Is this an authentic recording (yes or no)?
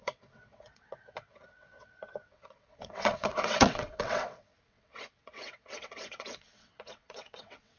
no